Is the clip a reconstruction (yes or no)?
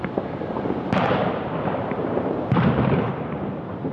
yes